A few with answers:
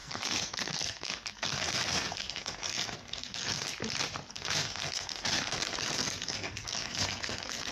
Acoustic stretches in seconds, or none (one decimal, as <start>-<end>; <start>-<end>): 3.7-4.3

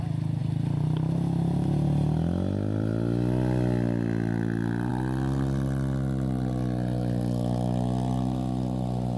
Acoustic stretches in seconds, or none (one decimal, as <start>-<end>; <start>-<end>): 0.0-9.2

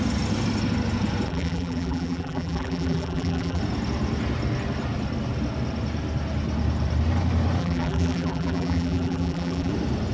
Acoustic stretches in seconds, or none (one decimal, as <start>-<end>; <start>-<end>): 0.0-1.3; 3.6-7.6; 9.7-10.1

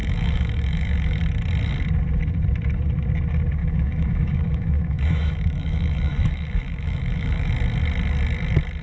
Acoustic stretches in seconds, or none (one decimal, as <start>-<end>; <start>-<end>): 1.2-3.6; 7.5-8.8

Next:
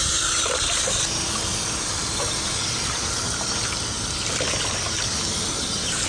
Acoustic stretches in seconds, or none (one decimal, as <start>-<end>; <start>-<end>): 0.0-6.1